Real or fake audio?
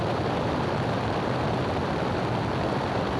real